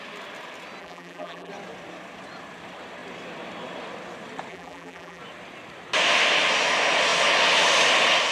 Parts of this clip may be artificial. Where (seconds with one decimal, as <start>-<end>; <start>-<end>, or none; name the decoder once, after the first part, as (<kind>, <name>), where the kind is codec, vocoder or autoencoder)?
0.8-1.5 (vocoder, BigVGAN v2); 4.5-5.2